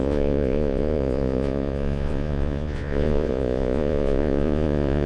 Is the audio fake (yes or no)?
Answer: yes